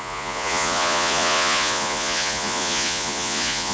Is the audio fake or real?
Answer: fake